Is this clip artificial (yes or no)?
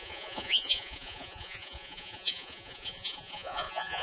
yes